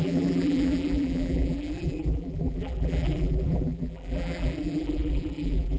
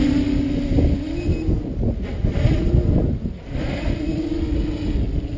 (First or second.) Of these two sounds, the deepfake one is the first